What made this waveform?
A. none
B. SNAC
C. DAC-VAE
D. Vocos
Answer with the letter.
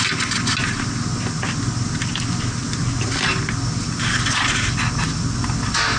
A